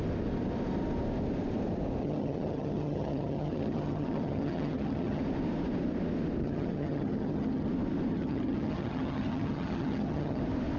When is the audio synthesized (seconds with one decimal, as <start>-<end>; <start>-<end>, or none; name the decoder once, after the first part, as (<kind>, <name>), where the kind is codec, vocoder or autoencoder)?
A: 2.0-5.2 (vocoder, HiFi-GAN); 6.4-7.7; 8.1-10.4

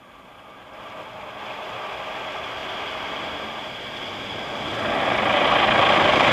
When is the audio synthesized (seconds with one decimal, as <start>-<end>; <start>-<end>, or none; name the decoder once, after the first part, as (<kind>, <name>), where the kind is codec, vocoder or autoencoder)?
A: none